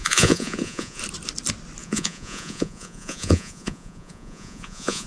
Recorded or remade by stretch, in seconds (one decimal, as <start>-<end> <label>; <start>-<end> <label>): 0.0-1.0 remade; 1.0-1.8 recorded; 1.8-5.1 remade